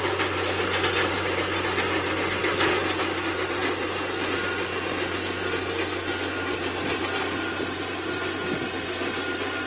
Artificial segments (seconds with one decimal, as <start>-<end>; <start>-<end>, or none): none